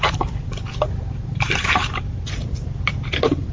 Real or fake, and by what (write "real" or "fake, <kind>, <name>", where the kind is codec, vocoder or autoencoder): fake, vocoder, BigVGAN v2